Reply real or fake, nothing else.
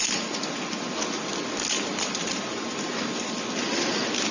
real